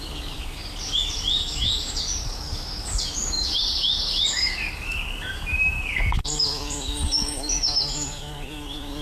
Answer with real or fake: fake